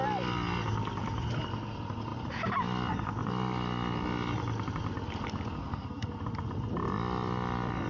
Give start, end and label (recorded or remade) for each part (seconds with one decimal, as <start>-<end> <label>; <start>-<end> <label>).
0.0-5.6 recorded; 5.6-6.1 remade; 6.1-7.9 recorded